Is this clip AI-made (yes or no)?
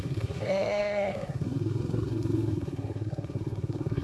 yes